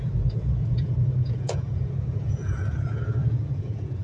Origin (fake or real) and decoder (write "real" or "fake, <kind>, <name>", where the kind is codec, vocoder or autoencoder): fake, vocoder, Vocos